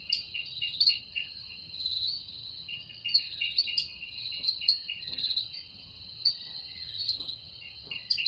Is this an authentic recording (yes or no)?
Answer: no